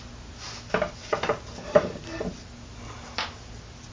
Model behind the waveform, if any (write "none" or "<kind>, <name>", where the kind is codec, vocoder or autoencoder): none